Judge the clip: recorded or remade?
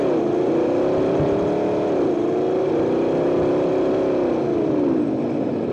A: recorded